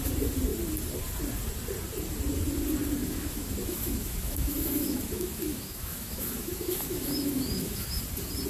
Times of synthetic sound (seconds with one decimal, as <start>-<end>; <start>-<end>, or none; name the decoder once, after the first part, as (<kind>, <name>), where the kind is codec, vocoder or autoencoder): 3.0-8.0 (autoencoder, DAC-VAE)